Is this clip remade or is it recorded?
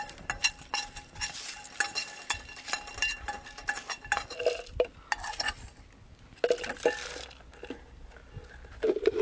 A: recorded